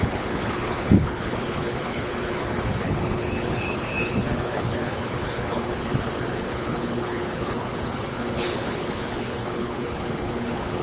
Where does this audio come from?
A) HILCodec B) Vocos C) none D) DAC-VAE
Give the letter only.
A